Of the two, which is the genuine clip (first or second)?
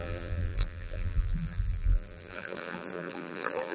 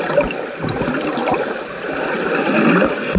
second